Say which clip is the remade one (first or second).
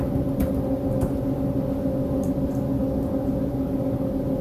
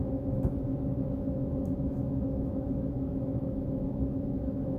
second